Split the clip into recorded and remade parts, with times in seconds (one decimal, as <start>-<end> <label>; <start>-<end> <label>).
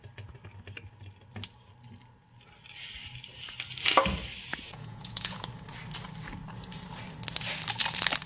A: 0.0-4.5 recorded; 4.5-5.5 remade; 5.5-8.3 recorded